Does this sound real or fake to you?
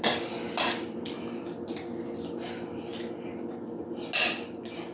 real